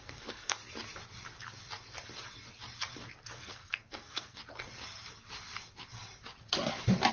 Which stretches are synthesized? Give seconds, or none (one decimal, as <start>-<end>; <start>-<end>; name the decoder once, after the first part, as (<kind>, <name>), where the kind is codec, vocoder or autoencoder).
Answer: 0.0-0.6 (codec, SNAC); 3.4-4.4